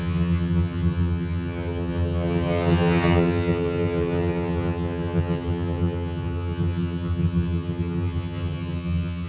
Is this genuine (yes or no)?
no